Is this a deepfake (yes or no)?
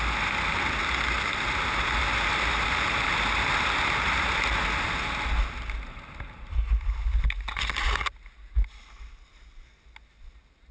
no